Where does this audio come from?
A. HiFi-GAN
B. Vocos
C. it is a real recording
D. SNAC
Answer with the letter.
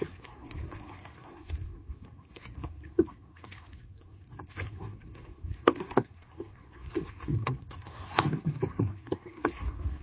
D